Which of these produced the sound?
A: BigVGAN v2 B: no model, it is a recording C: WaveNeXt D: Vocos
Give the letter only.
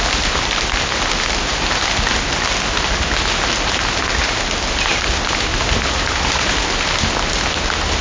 B